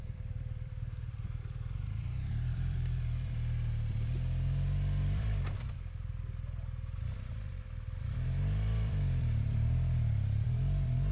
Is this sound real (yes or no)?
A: no